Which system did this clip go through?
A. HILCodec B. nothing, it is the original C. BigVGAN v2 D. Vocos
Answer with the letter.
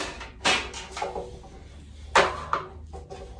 B